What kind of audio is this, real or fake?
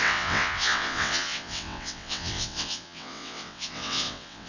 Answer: fake